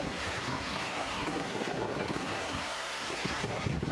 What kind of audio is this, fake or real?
fake